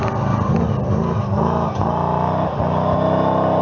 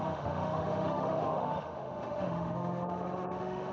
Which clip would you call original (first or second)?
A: first